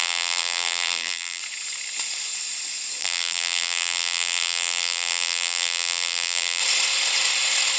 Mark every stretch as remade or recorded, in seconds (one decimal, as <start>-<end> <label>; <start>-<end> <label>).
0.0-1.4 remade; 1.4-3.0 recorded; 3.0-6.6 remade; 6.6-7.8 recorded